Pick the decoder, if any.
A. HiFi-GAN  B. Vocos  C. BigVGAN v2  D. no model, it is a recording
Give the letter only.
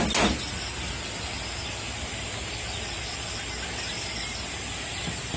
D